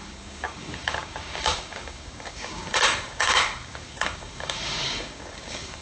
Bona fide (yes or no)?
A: no